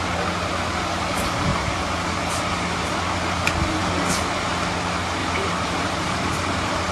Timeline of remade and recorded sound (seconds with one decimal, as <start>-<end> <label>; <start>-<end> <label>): 0.0-5.2 recorded; 5.2-6.9 remade